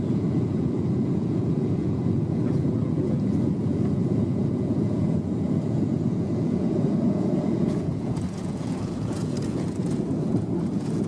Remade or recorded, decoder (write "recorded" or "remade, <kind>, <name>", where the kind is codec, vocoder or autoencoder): remade, vocoder, Vocos